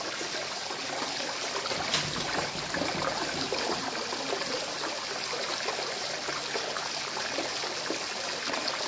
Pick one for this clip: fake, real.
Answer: real